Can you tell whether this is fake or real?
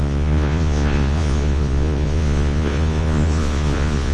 fake